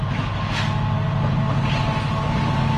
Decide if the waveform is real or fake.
real